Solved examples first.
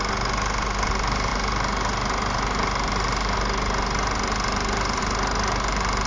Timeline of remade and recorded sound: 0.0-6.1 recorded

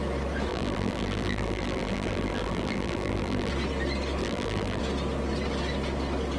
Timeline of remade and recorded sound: 0.0-0.5 recorded; 0.5-3.5 remade; 3.5-4.2 recorded; 4.2-4.8 remade; 4.8-6.4 recorded

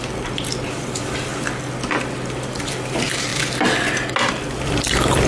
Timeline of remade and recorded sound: 0.0-1.3 remade; 1.3-2.6 recorded; 2.6-3.3 remade; 3.3-4.3 recorded; 4.3-5.3 remade

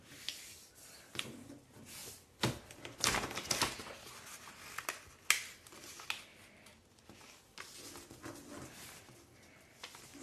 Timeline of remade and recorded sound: 0.0-10.2 recorded

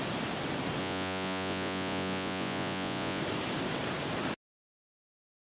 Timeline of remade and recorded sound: 0.0-0.8 recorded; 0.8-3.2 remade; 3.2-5.5 recorded

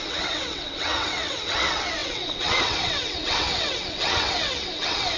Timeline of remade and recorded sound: 0.0-5.2 remade

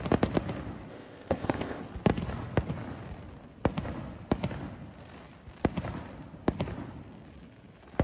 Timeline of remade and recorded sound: 0.0-0.9 recorded; 0.9-1.8 remade; 1.8-8.0 recorded

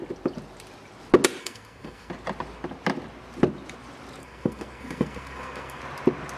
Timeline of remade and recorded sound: 0.0-1.4 recorded; 1.4-2.1 remade; 2.1-4.2 recorded; 4.2-5.8 remade; 5.8-6.4 recorded